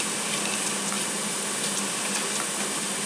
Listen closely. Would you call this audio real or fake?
real